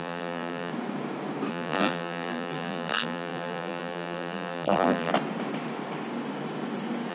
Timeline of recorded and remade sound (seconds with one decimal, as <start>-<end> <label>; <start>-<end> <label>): 0.0-0.7 remade; 0.7-1.5 recorded; 1.5-5.1 remade; 5.1-7.1 recorded